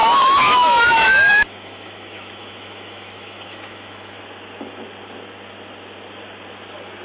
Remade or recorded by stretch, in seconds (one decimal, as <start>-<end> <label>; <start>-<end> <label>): 0.0-4.2 remade; 4.2-7.0 recorded